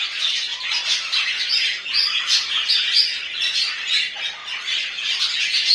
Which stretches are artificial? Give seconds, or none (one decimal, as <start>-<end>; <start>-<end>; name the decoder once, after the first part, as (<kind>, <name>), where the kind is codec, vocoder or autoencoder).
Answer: 4.4-5.2 (vocoder, BigVGAN v2)